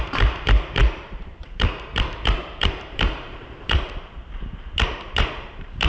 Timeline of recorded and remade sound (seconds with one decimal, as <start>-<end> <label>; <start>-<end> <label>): 0.0-5.9 remade